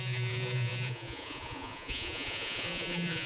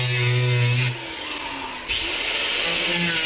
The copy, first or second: first